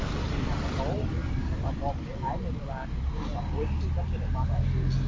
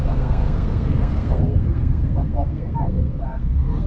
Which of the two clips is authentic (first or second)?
first